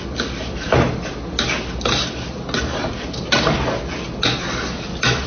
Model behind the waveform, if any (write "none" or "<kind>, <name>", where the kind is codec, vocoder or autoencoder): none